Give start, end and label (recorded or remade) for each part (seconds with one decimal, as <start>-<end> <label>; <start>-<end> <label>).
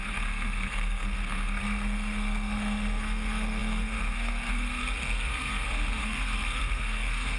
0.0-7.4 remade